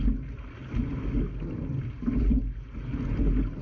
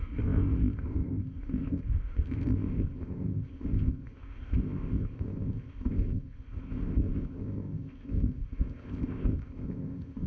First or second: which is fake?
second